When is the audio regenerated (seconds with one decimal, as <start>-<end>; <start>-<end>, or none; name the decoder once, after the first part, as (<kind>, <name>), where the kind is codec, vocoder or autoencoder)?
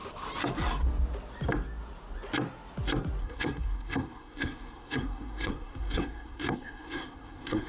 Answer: 3.2-7.7 (codec, SNAC)